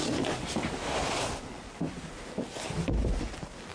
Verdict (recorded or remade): recorded